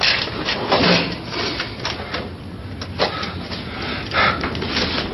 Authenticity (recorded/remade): recorded